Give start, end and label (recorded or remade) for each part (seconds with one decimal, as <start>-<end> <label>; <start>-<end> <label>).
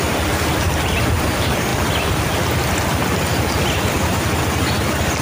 0.0-1.7 recorded; 1.7-3.9 remade; 3.9-5.2 recorded